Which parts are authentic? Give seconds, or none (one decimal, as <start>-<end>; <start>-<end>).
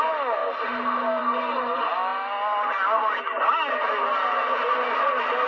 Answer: 0.0-5.5